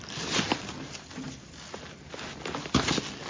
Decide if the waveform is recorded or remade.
recorded